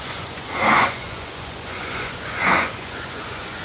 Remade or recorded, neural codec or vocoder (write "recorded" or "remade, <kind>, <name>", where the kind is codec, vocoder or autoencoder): remade, vocoder, Vocos